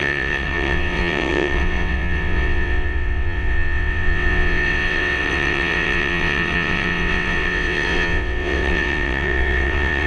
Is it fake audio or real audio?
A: fake